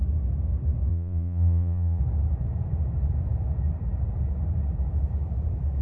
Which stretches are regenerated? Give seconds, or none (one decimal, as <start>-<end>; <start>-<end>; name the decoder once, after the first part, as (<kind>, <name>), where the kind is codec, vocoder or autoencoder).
0.9-2.0 (vocoder, Vocos)